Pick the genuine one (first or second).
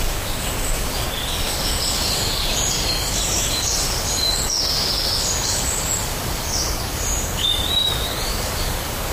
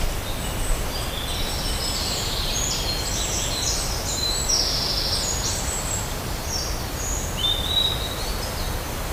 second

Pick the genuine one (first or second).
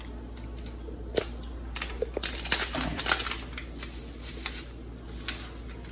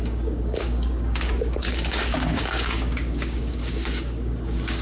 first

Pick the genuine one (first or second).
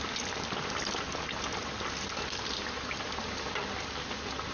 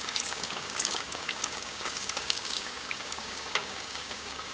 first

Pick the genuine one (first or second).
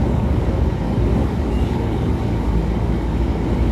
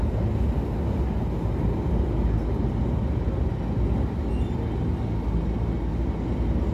second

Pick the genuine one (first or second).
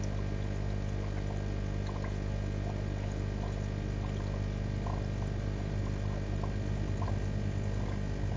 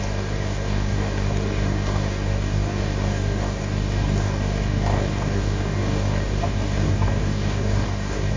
first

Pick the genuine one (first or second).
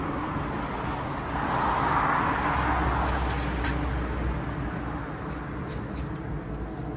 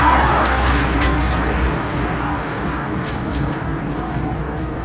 first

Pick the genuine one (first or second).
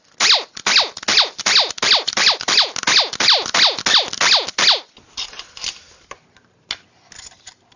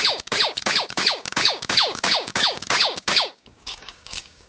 first